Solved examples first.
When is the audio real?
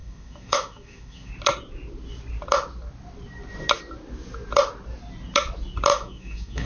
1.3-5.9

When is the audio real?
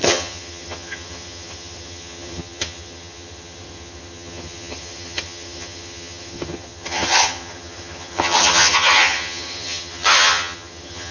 none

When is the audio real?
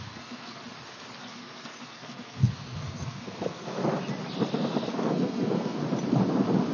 0.6-1.2; 3.8-5.1; 5.8-6.7